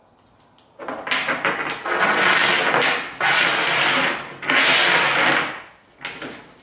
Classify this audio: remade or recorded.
recorded